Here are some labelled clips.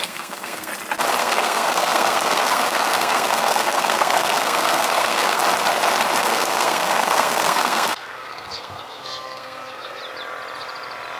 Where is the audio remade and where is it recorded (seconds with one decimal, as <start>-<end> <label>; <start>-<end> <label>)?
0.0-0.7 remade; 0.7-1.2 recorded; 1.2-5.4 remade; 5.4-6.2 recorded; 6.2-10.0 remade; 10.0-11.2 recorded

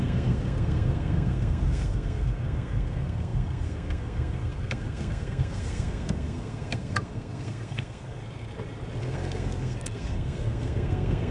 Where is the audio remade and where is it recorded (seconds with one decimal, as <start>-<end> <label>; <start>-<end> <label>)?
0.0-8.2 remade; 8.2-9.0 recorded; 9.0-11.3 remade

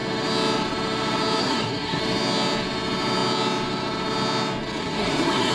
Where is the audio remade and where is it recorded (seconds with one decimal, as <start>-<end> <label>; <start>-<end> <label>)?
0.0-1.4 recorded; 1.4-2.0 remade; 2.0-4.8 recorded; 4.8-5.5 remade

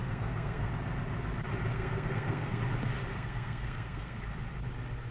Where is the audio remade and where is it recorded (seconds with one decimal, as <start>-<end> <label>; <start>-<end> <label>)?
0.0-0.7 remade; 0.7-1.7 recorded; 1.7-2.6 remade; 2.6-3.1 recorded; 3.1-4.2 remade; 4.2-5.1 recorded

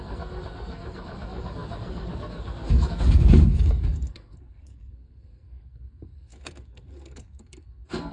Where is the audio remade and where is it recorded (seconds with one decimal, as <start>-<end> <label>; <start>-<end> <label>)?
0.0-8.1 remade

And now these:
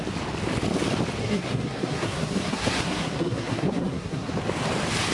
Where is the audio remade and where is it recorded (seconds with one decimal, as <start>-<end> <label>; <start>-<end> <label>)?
0.0-1.2 recorded; 1.2-4.3 remade; 4.3-5.1 recorded